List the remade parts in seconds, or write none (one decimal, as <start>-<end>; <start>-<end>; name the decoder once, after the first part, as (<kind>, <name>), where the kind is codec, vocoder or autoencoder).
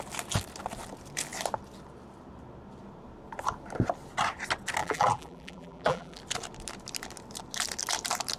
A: 4.8-6.2 (vocoder, BigVGAN v2)